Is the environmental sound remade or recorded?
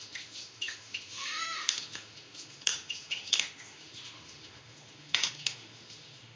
remade